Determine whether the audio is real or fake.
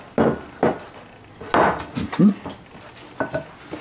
real